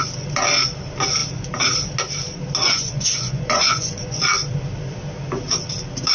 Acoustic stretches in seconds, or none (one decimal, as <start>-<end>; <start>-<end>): 0.0-2.6; 4.2-6.1

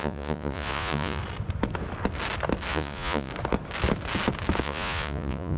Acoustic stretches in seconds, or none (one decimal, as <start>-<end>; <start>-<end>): 1.2-2.7; 3.3-4.6